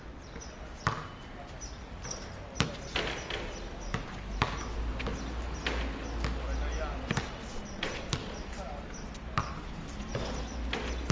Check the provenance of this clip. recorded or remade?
recorded